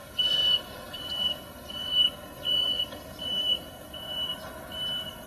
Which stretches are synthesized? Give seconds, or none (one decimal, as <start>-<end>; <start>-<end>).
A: 0.0-4.3

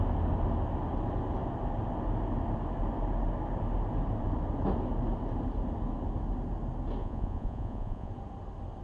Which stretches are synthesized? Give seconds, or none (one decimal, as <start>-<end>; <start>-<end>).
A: 7.0-8.1

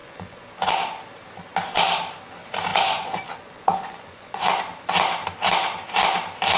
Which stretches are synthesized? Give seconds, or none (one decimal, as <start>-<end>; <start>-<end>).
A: 0.0-0.7; 2.7-4.6

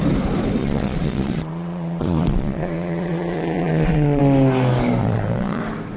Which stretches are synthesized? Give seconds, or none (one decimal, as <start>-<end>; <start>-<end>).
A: 0.6-4.2; 5.0-5.6

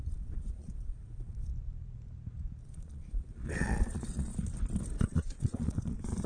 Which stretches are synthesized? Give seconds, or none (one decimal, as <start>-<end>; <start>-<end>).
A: 0.0-1.5; 2.6-4.3; 4.9-6.3

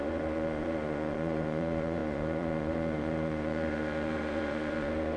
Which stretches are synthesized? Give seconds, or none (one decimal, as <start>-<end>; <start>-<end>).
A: 0.0-5.2